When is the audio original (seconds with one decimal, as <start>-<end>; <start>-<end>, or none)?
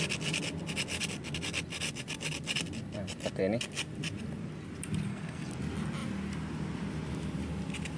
0.0-5.1; 5.6-8.0